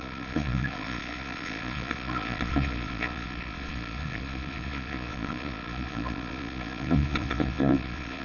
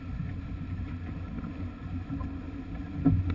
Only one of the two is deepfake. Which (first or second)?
first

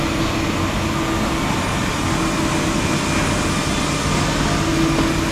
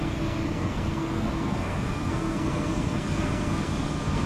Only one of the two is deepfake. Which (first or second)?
second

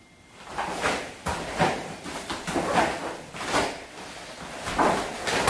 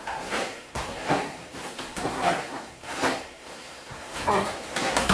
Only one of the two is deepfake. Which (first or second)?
second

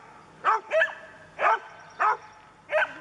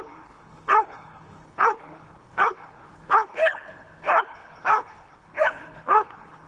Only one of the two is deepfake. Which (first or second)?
second